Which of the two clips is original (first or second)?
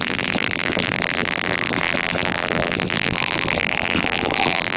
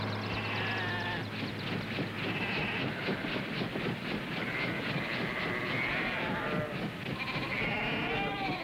second